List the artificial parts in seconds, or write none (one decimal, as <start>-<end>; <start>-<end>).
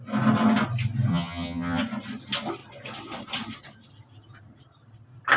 1.1-1.8